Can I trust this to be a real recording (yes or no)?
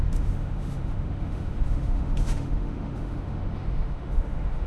no